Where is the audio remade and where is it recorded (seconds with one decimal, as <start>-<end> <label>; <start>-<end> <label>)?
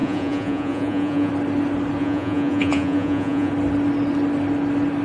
0.0-1.3 remade; 1.3-2.0 recorded; 2.0-3.5 remade; 3.5-5.0 recorded